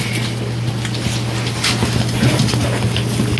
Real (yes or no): yes